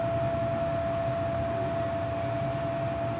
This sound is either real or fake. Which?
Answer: real